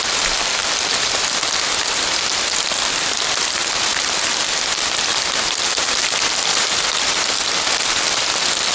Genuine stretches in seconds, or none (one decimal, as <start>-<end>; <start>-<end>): 0.0-6.5; 7.3-8.7